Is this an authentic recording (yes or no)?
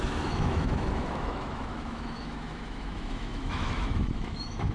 no